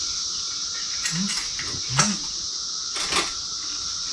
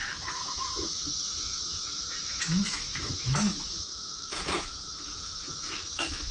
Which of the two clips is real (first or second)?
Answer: first